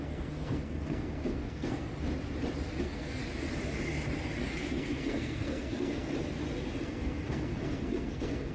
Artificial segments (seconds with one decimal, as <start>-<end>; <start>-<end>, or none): 0.0-1.9; 2.8-3.2; 4.4-6.1; 6.8-8.5